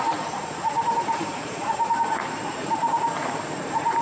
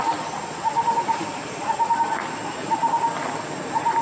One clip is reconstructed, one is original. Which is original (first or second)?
second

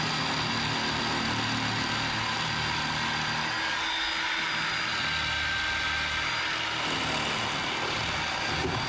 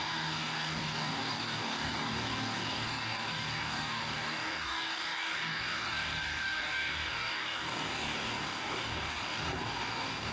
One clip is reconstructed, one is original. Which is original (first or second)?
first